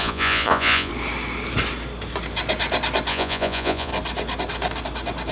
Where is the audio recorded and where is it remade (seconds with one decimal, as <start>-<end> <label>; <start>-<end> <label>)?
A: 0.0-0.9 remade; 0.9-3.1 recorded; 3.1-3.9 remade; 3.9-5.3 recorded